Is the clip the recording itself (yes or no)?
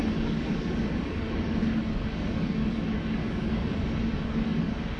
no